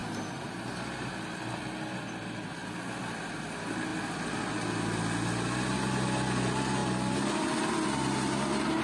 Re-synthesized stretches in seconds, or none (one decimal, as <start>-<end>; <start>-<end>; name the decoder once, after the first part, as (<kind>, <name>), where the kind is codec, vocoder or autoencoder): 6.8-7.7 (vocoder, BigVGAN v2)